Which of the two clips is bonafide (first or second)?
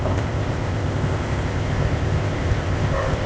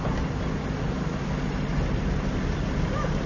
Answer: second